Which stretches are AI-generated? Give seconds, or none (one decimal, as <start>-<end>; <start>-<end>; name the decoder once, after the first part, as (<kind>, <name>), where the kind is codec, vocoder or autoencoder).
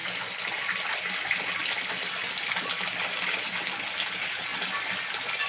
none